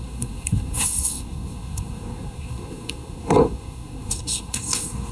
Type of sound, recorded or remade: remade